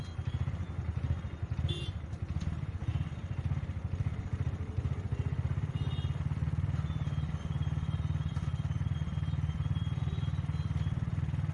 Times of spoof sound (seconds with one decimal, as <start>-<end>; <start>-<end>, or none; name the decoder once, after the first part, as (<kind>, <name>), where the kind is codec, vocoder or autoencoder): none